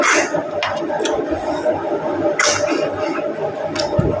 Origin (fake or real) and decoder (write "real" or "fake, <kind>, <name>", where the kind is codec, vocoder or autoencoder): real